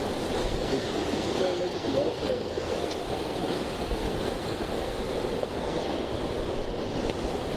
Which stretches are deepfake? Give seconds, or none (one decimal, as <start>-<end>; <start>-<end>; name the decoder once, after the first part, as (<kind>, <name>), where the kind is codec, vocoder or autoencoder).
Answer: 0.4-5.0 (codec, SNAC); 5.4-6.2